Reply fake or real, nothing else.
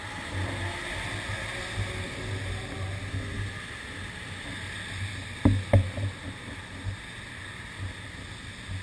real